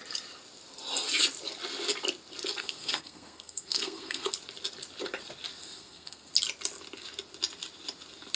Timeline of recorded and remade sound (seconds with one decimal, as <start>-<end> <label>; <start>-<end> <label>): 0.0-2.6 recorded; 2.6-4.3 remade; 4.3-5.6 recorded; 5.6-6.3 remade; 6.3-8.4 recorded